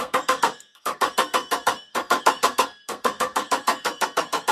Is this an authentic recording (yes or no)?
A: no